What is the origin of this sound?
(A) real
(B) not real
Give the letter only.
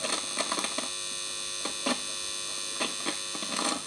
A